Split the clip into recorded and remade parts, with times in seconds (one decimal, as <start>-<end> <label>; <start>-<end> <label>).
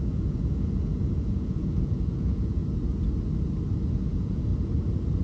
0.0-2.6 remade; 2.6-3.9 recorded; 3.9-4.5 remade; 4.5-5.2 recorded